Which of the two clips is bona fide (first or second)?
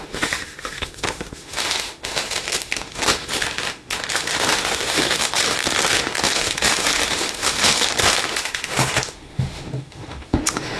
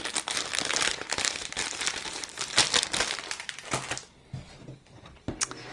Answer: second